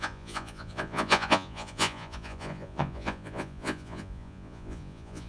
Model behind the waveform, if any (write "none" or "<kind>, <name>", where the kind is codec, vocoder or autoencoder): vocoder, Vocos